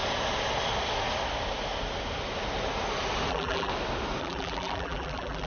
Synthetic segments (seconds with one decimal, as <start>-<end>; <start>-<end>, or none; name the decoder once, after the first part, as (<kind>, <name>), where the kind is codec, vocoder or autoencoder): 3.3-3.7 (vocoder, BigVGAN v2); 4.2-5.5